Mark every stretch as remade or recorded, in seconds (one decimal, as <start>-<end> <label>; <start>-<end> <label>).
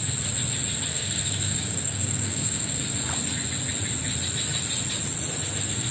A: 0.0-0.9 recorded; 0.9-2.8 remade; 2.8-5.9 recorded